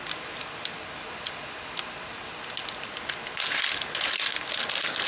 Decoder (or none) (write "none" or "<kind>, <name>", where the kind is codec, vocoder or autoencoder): none